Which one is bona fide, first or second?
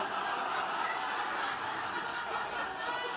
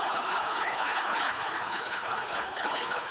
first